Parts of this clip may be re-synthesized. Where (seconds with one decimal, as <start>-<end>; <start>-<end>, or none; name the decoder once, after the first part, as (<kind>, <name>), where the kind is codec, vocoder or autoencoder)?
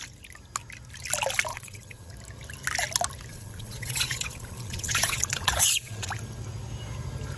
1.5-2.1 (vocoder, Vocos); 3.3-6.1